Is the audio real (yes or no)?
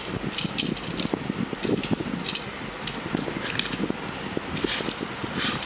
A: yes